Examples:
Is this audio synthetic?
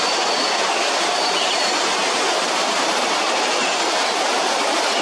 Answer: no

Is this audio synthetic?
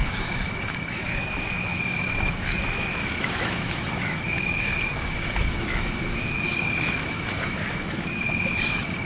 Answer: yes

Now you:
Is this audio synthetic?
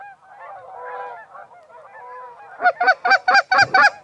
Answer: no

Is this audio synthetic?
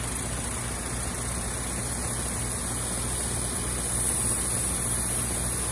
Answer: no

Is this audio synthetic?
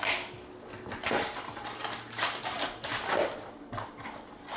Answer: no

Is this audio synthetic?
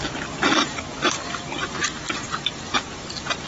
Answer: no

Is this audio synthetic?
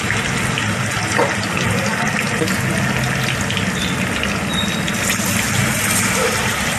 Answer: no